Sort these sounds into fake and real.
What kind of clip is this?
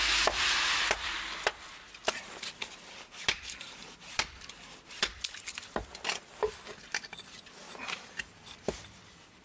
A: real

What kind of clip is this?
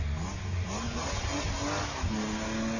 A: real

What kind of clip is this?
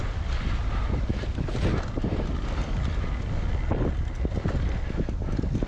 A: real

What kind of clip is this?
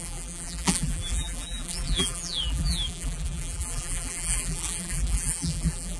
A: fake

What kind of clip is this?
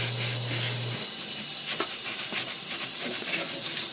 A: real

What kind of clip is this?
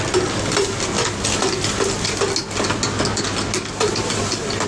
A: real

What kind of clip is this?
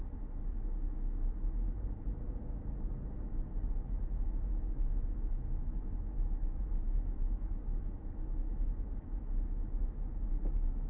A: fake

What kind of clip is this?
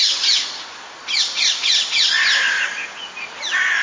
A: real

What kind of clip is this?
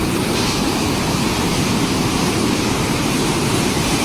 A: fake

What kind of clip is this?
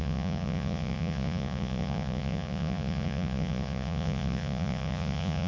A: fake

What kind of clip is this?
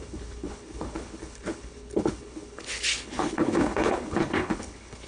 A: fake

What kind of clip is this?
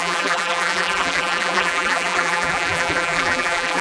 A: fake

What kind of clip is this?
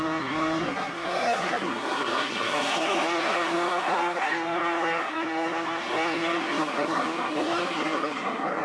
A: fake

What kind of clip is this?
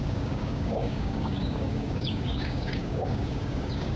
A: fake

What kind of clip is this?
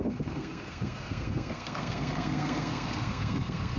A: fake